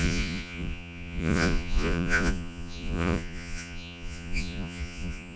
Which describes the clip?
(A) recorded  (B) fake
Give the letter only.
B